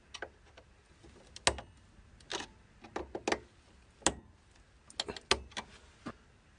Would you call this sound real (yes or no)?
yes